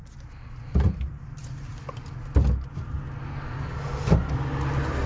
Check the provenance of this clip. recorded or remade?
recorded